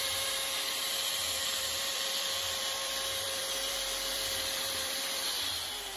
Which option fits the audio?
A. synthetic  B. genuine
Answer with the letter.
A